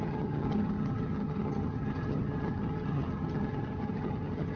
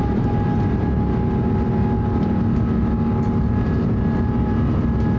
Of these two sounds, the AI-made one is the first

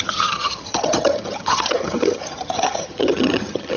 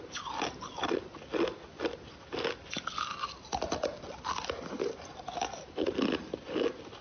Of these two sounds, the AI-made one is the first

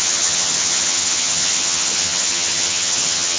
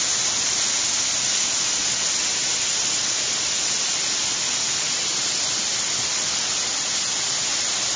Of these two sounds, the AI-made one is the first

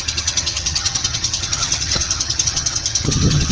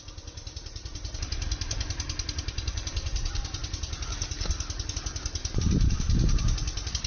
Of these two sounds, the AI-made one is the first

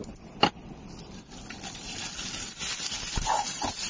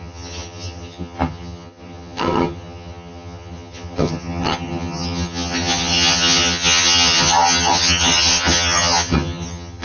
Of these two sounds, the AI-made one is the second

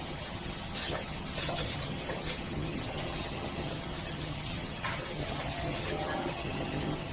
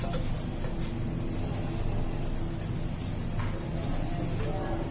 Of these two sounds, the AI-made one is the first